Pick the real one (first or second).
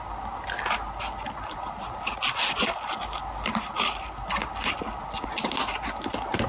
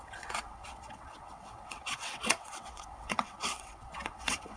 first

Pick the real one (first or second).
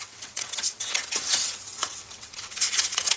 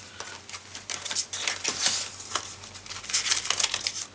second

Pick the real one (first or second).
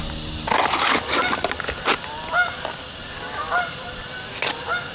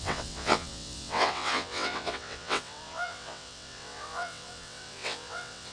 first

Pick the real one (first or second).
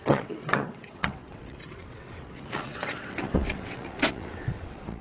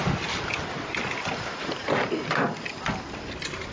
second